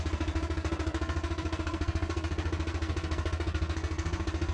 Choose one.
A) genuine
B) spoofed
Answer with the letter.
B